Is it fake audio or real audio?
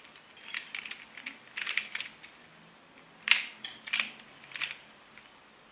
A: fake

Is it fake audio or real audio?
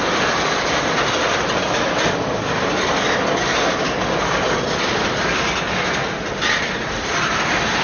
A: real